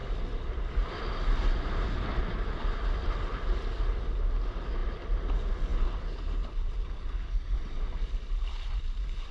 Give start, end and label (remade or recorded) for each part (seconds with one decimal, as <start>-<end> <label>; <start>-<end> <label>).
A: 0.0-1.1 remade; 1.1-9.3 recorded